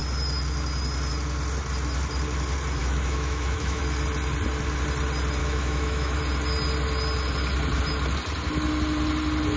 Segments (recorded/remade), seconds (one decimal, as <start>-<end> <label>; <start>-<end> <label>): 0.0-2.8 recorded; 2.8-3.8 remade; 3.8-5.4 recorded; 5.4-6.2 remade; 6.2-9.6 recorded